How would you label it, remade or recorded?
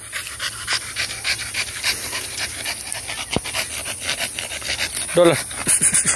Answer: recorded